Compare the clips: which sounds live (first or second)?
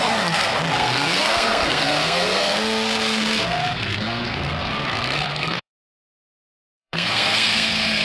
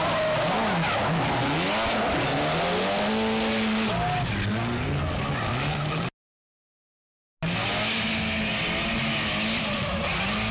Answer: second